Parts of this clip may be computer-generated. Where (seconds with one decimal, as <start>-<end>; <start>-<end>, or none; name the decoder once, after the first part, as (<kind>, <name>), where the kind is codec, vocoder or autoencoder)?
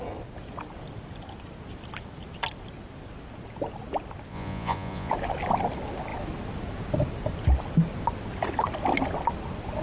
4.3-5.1 (vocoder, Vocos)